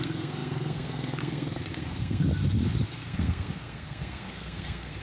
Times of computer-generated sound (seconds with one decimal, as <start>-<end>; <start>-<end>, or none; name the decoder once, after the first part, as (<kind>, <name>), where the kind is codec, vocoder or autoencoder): 0.0-2.2 (codec, SNAC); 2.9-5.0